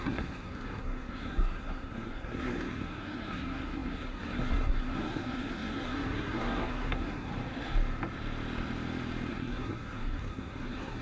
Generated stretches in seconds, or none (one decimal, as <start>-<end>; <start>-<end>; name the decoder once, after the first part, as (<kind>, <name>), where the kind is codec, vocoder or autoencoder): 0.0-7.3 (codec, SNAC); 9.3-11.0